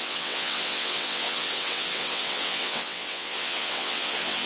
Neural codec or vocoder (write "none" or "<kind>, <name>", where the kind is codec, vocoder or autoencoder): vocoder, WaveNeXt